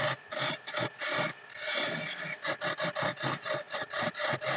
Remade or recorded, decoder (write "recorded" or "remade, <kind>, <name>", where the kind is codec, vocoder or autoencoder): recorded